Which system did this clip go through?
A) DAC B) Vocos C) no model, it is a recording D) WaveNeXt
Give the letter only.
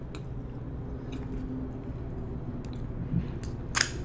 C